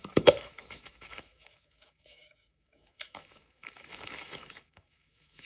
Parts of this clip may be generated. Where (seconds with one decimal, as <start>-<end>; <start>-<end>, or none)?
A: 0.0-5.5